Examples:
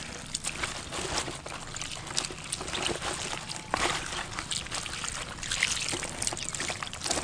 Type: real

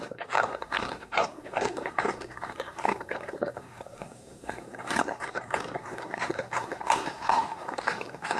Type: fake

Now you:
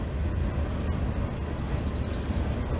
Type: real